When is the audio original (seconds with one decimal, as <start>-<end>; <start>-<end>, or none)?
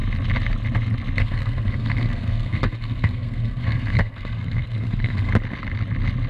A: 0.0-1.2; 5.3-6.3